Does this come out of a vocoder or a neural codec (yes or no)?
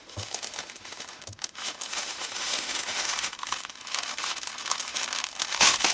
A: yes